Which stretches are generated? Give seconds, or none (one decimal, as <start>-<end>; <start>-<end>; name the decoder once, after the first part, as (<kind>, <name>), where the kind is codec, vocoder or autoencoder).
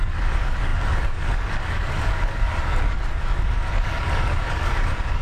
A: 0.0-5.2 (codec, DAC)